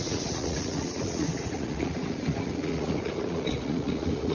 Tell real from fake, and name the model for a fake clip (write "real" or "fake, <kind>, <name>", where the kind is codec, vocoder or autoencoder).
fake, vocoder, Vocos